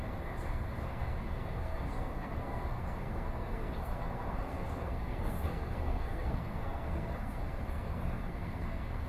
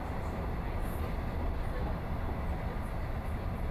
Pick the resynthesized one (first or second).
first